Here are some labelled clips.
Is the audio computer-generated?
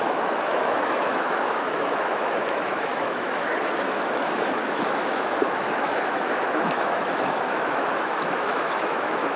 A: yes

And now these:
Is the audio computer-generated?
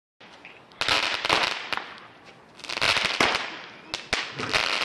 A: no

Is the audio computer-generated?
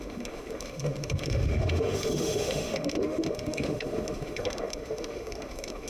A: yes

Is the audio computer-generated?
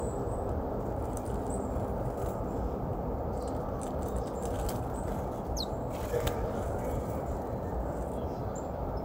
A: no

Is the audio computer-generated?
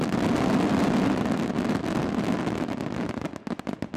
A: no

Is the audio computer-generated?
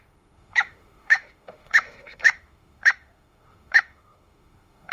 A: yes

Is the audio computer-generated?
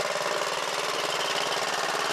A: no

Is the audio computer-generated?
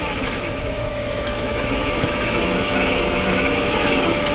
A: yes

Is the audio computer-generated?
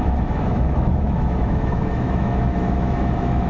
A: yes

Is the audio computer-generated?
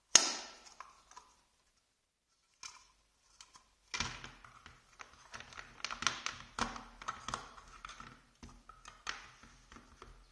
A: no